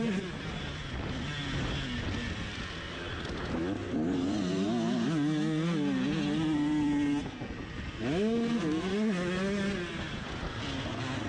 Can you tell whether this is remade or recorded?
recorded